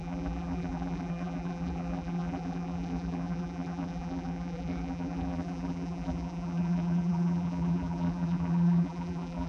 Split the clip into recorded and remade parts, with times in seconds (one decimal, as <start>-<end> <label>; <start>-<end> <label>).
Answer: 0.0-9.5 remade